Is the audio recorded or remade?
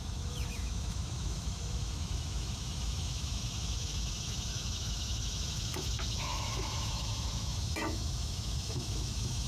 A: remade